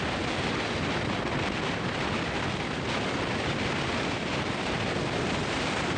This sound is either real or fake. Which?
fake